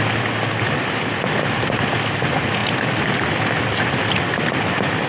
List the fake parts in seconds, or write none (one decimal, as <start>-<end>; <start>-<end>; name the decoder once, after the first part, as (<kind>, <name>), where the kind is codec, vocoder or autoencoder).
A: none